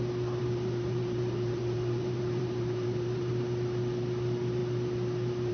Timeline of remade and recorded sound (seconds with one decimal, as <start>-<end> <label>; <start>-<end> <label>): 0.0-0.4 recorded; 0.4-3.3 remade; 3.3-5.5 recorded